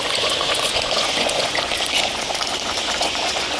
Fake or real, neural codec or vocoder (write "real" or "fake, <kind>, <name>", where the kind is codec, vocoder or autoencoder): fake, vocoder, Vocos